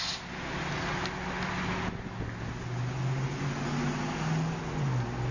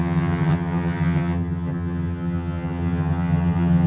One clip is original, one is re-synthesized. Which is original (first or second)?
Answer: first